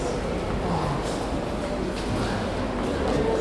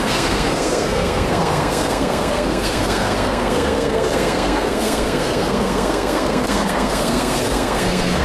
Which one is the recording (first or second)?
first